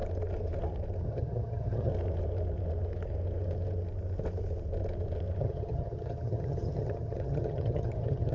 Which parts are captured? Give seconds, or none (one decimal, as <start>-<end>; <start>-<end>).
0.0-1.0; 1.9-5.4